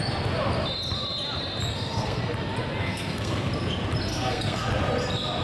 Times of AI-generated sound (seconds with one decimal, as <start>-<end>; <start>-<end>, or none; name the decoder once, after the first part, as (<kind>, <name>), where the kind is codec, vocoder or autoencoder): 1.7-2.2 (codec, SNAC); 2.8-3.5; 4.1-4.7